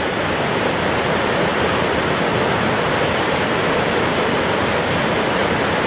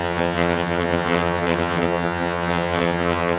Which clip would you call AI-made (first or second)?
second